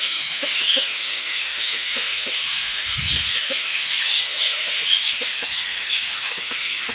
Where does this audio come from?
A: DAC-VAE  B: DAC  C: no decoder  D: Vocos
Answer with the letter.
A